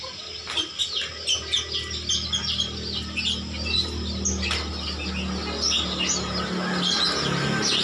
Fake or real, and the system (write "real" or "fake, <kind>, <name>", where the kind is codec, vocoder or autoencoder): real